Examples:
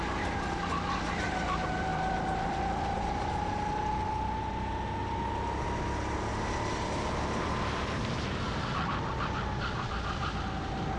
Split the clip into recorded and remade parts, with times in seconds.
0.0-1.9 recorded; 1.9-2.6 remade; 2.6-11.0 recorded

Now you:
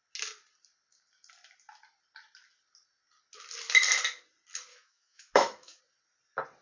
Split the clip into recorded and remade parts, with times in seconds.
0.0-4.7 recorded; 4.7-5.8 remade; 5.8-6.6 recorded

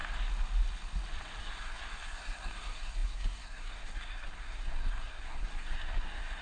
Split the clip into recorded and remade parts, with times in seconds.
0.0-1.4 recorded; 1.4-6.4 remade

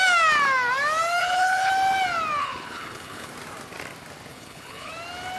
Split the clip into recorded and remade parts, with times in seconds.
0.0-1.2 recorded; 1.2-1.7 remade; 1.7-2.4 recorded; 2.4-3.3 remade; 3.3-4.3 recorded; 4.3-4.9 remade; 4.9-5.4 recorded

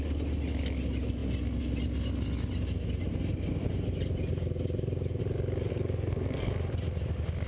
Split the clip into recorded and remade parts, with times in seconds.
0.0-5.7 recorded; 5.7-6.5 remade; 6.5-7.5 recorded